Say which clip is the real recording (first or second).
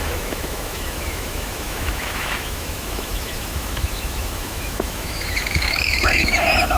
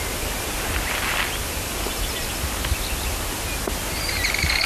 second